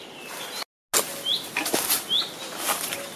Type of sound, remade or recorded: recorded